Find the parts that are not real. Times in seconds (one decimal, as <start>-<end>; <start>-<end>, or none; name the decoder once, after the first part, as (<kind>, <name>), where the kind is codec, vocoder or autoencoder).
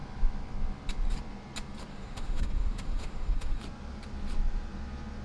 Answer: 1.9-3.6 (autoencoder, DAC-VAE)